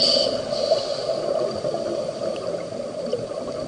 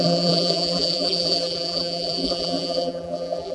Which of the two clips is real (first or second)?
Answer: first